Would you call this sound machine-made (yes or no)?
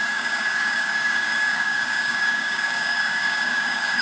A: yes